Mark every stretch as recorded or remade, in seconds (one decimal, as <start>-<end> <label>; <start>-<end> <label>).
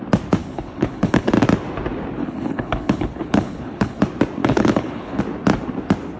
0.0-0.4 recorded; 0.4-1.3 remade; 1.3-2.2 recorded; 2.2-4.0 remade; 4.0-4.4 recorded; 4.4-5.2 remade; 5.2-6.2 recorded